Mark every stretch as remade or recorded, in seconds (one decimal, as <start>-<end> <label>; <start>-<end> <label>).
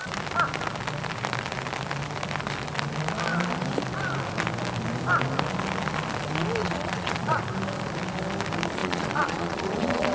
0.0-6.6 recorded; 6.6-7.4 remade; 7.4-8.8 recorded; 8.8-10.1 remade